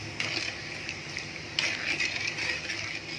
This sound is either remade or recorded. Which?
recorded